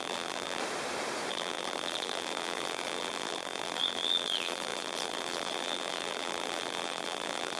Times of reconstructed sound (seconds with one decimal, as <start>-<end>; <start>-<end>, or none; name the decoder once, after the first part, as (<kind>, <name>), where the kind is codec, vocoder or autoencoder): 0.0-0.6 (vocoder, BigVGAN v2); 1.3-7.6